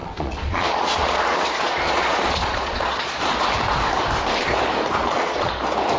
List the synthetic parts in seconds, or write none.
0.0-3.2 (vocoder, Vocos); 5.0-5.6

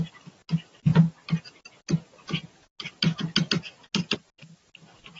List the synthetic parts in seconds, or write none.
none

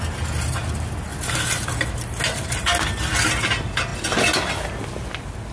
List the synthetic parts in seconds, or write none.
none

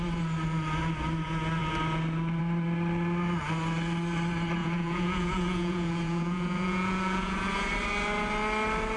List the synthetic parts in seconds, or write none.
4.6-7.7 (vocoder, Vocos)

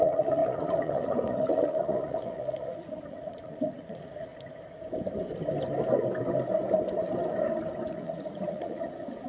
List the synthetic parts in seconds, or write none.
0.0-4.3 (vocoder, Vocos); 7.9-9.3

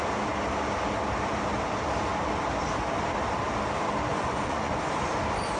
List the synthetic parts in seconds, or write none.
4.1-4.8 (vocoder, Vocos)

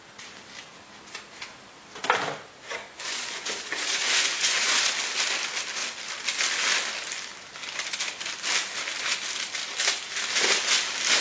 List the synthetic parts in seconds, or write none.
2.8-4.8 (vocoder, Vocos)